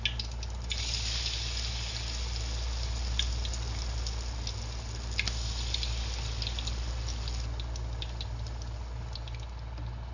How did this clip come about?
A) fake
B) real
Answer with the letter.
B